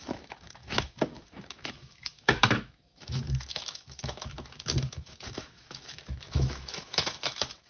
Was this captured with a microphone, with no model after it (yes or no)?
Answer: no